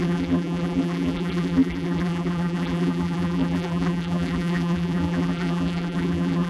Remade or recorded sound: remade